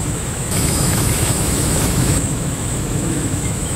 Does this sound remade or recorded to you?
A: remade